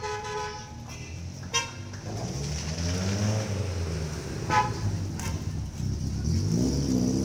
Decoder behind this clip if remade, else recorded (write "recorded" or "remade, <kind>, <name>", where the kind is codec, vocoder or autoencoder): recorded